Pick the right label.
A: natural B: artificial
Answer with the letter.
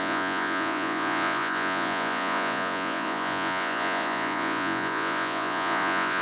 B